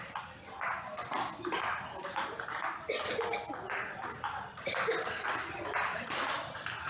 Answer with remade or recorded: recorded